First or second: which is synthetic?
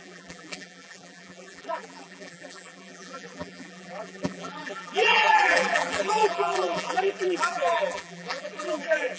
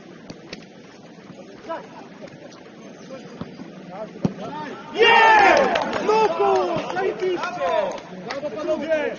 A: first